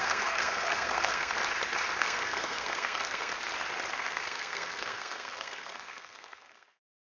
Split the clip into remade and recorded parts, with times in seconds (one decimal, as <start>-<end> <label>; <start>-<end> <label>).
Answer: 0.0-1.4 remade; 1.4-2.0 recorded; 2.0-3.3 remade; 3.3-3.9 recorded; 3.9-7.1 remade